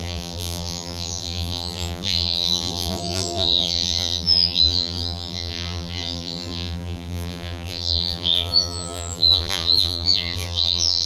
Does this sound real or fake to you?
fake